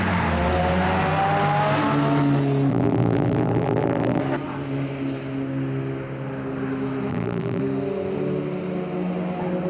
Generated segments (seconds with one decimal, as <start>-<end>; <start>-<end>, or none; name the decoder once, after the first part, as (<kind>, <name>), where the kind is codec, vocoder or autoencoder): 2.7-4.2 (vocoder, BigVGAN v2); 7.1-7.6